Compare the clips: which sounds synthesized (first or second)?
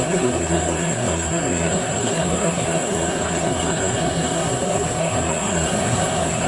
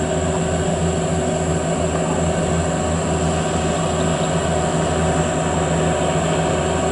first